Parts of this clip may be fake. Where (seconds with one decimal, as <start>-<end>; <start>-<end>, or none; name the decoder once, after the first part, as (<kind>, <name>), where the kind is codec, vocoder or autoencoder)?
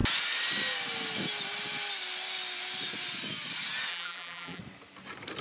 3.9-4.6 (vocoder, BigVGAN v2)